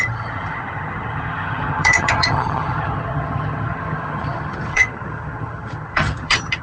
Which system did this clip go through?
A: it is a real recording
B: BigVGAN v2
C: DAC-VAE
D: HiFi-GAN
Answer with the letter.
D